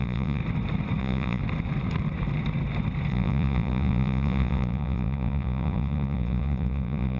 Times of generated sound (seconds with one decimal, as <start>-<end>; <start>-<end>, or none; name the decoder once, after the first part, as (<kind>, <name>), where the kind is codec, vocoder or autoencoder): 0.0-0.4 (vocoder, Vocos); 1.0-1.4; 3.1-7.2